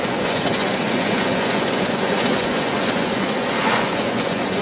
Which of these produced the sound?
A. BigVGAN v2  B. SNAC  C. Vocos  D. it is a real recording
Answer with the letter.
C